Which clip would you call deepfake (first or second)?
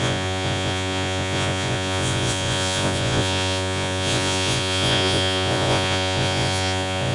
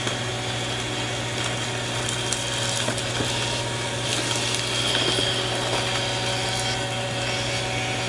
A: first